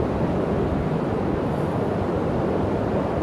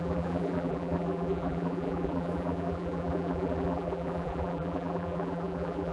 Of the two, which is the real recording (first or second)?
first